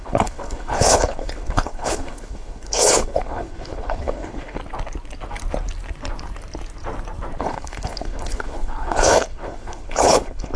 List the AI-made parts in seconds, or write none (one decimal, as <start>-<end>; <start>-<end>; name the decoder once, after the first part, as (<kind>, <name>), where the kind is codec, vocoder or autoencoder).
0.0-4.6 (codec, HILCodec); 7.4-10.6